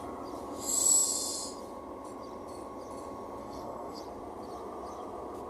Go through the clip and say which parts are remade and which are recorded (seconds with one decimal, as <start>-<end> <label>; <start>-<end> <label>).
0.0-3.4 recorded; 3.4-4.0 remade; 4.0-5.5 recorded